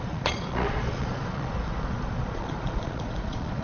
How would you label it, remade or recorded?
remade